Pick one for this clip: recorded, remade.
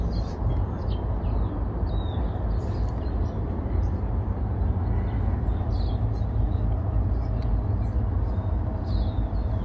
recorded